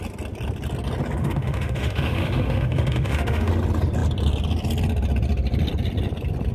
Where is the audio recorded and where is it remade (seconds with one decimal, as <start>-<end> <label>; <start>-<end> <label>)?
0.0-1.2 recorded; 1.2-3.5 remade; 3.5-6.5 recorded